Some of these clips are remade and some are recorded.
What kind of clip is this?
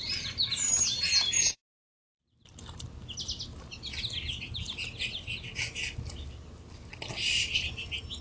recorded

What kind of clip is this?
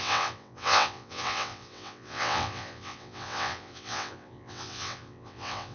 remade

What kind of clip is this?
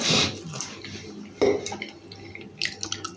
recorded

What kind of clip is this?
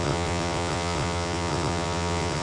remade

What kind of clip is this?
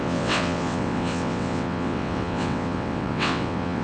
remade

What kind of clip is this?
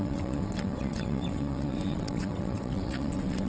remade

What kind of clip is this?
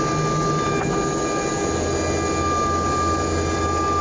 recorded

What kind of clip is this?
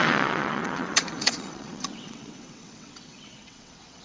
remade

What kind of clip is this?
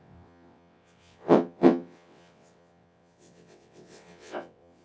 remade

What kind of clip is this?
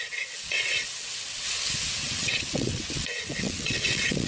remade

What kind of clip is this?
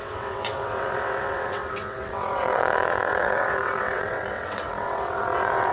remade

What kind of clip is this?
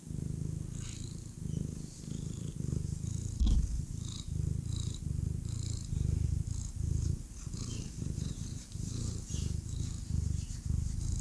recorded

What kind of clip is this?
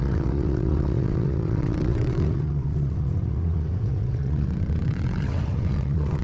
remade